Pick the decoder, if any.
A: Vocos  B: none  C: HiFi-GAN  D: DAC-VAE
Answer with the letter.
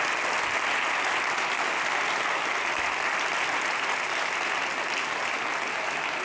B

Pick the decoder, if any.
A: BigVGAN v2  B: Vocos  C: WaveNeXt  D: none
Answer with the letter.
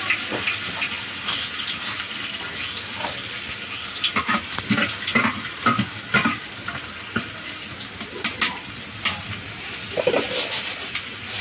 D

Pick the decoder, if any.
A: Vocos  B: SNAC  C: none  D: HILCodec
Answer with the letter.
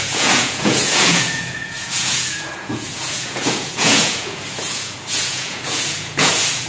A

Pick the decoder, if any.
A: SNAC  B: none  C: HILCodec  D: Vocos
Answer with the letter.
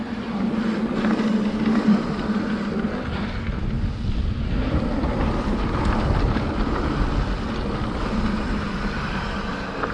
B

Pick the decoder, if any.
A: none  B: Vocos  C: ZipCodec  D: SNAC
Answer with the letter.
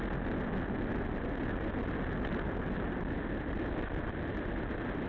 A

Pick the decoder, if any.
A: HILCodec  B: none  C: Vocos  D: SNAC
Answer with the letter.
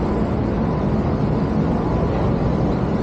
B